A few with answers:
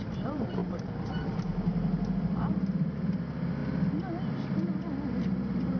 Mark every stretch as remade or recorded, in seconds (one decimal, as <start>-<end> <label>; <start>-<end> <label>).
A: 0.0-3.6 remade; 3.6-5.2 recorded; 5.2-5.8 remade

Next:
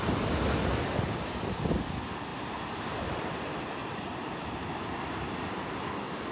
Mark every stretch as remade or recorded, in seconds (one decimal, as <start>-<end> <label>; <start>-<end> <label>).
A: 0.0-2.3 recorded; 2.3-3.2 remade; 3.2-3.8 recorded; 3.8-5.7 remade; 5.7-6.3 recorded

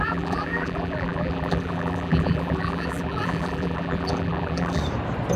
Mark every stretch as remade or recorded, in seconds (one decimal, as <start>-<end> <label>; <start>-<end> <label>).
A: 0.0-4.8 remade; 4.8-5.4 recorded

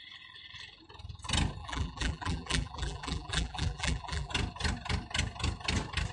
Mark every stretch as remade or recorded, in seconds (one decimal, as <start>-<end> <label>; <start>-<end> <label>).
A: 0.0-1.6 recorded; 1.6-4.3 remade; 4.3-6.1 recorded